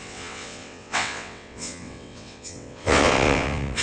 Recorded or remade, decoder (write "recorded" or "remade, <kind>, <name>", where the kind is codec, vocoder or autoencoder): remade, vocoder, WaveNeXt